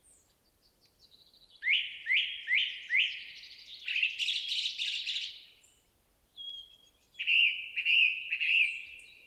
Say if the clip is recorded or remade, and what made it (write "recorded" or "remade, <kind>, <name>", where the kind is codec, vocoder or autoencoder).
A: recorded